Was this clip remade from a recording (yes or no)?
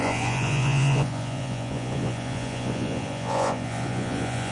yes